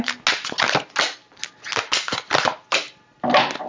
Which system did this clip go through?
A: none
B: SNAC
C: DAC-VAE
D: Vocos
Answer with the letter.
A